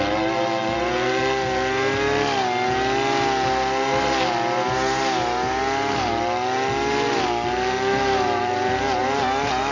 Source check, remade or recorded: recorded